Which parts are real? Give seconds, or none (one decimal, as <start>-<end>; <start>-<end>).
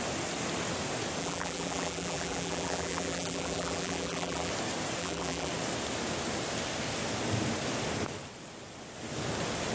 0.0-1.2; 4.5-5.0; 5.5-9.7